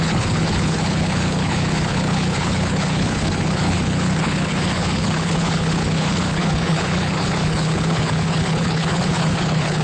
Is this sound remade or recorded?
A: remade